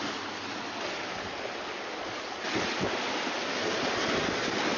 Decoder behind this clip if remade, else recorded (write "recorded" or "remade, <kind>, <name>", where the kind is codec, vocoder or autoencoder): recorded